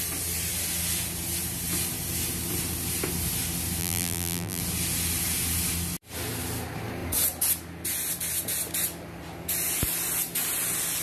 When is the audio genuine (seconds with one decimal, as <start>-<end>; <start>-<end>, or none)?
0.0-3.8; 4.6-11.0